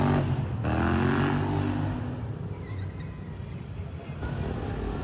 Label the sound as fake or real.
real